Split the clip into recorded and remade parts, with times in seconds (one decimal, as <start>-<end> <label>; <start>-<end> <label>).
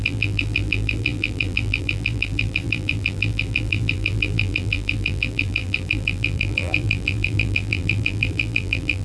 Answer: 0.0-9.0 remade